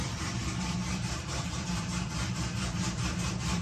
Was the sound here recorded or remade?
remade